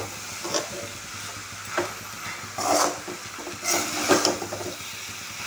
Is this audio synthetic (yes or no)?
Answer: no